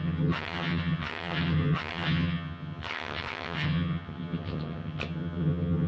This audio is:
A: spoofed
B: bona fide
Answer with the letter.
A